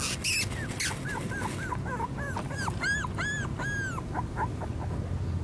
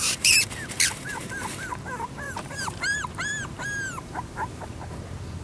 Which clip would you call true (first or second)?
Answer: first